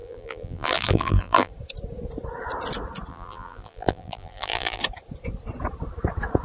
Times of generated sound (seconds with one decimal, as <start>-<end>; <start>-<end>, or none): 0.0-1.5; 3.1-4.8